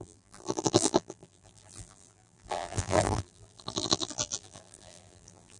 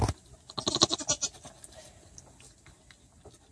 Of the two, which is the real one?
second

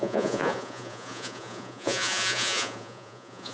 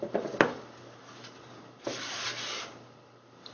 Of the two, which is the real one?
second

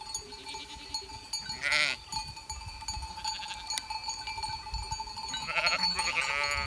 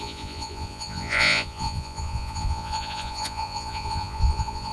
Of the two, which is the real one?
first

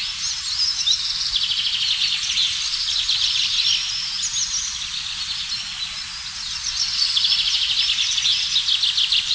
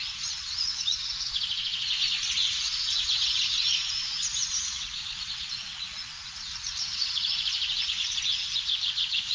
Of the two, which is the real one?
first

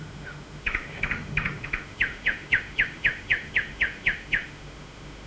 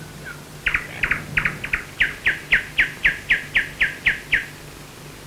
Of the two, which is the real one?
second